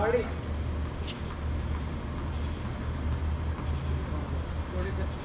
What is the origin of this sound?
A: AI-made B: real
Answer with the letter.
B